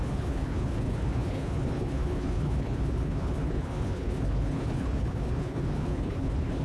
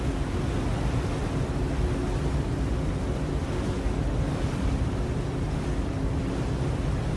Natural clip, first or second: second